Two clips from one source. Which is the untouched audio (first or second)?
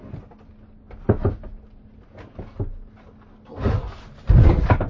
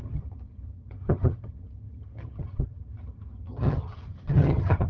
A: first